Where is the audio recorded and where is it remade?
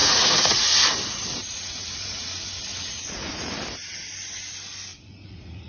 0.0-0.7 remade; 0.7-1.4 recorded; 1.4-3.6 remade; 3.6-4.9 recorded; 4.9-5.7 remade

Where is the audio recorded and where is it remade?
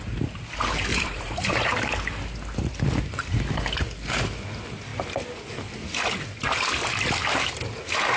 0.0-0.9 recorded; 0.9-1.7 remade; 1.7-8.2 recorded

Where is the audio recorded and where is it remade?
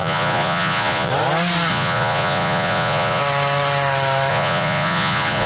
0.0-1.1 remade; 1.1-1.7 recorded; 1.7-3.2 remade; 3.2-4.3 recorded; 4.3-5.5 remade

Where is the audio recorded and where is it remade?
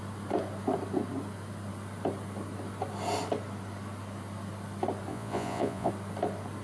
0.0-5.1 recorded; 5.1-5.9 remade; 5.9-6.6 recorded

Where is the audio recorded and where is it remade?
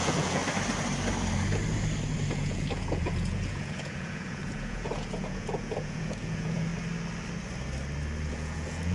0.0-0.4 remade; 0.4-2.3 recorded; 2.3-6.7 remade; 6.7-8.3 recorded; 8.3-8.9 remade